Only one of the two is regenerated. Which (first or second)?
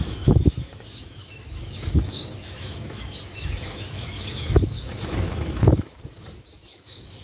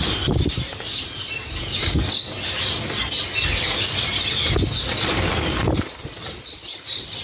first